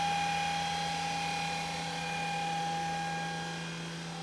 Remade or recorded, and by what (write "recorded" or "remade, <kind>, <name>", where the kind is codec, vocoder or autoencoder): recorded